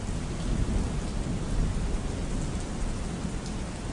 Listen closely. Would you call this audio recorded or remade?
recorded